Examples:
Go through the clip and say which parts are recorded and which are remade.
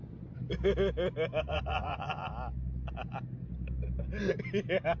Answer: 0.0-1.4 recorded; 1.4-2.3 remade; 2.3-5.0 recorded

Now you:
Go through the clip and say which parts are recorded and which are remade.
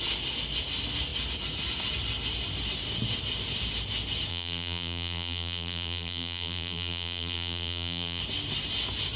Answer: 0.0-4.3 recorded; 4.3-8.2 remade; 8.2-9.2 recorded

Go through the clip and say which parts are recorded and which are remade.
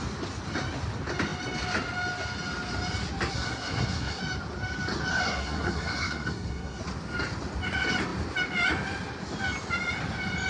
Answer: 0.0-3.3 recorded; 3.3-4.2 remade; 4.2-5.1 recorded; 5.1-6.8 remade; 6.8-10.5 recorded